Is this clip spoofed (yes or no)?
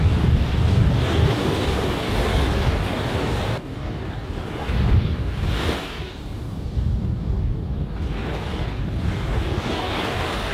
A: yes